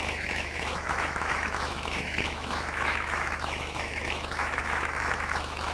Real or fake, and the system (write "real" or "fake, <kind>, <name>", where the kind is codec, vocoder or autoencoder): fake, autoencoder, DAC-VAE